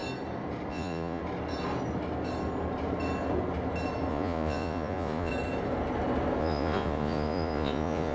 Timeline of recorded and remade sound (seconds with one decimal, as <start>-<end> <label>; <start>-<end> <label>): 0.0-0.7 recorded; 0.7-1.2 remade; 1.2-4.1 recorded; 4.1-5.3 remade; 5.3-6.4 recorded; 6.4-8.1 remade